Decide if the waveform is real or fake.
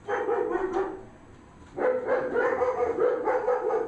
real